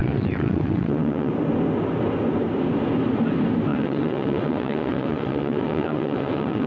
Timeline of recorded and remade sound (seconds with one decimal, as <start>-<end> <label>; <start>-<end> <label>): 0.0-1.3 remade; 1.3-3.7 recorded; 3.7-6.7 remade